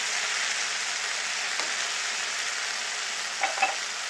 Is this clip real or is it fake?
real